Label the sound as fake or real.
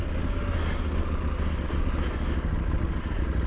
real